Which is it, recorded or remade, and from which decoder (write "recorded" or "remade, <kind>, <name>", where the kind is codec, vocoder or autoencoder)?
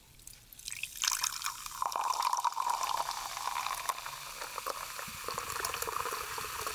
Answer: recorded